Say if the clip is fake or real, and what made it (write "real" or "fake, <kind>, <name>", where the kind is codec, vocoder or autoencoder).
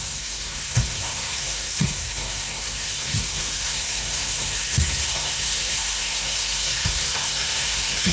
fake, codec, SNAC